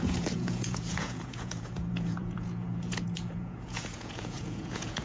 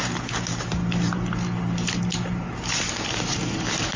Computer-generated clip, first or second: first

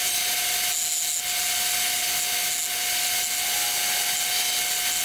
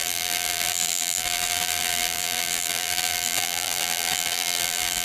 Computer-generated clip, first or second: second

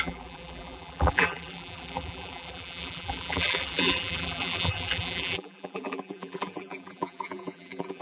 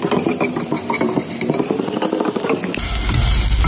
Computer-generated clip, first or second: first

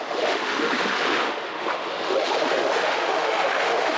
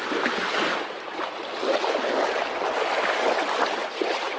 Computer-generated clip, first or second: first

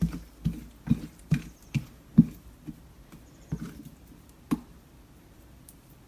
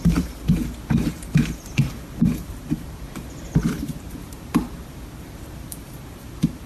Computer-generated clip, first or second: second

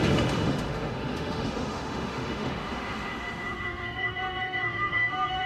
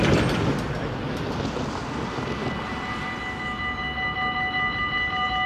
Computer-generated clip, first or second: first